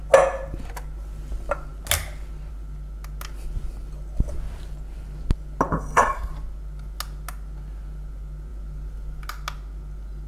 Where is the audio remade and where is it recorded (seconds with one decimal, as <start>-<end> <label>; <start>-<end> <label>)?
0.0-5.7 recorded; 5.7-6.3 remade; 6.3-10.3 recorded